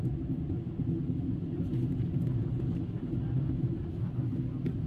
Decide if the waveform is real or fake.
real